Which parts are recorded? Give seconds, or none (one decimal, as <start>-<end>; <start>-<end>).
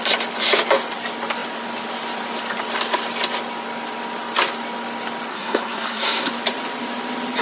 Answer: 0.0-5.3; 6.3-7.4